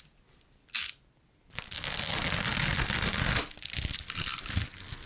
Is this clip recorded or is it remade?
recorded